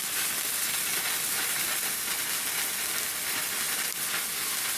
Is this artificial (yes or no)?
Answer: no